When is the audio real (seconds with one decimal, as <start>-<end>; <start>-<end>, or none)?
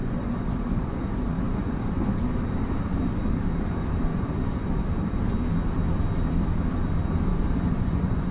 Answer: 2.1-4.1; 4.9-7.3